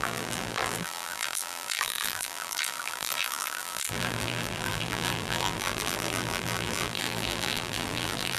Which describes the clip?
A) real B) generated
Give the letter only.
B